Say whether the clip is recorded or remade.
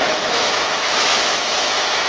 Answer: remade